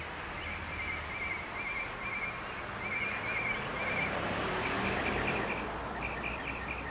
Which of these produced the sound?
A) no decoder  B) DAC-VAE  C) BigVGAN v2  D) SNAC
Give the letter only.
A